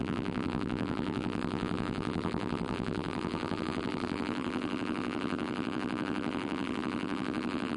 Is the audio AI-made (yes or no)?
yes